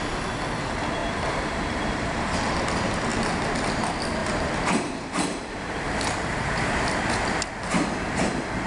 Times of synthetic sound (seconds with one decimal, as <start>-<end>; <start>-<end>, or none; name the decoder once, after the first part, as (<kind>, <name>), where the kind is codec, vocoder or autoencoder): 1.0-2.4 (vocoder, BigVGAN v2); 4.2-7.0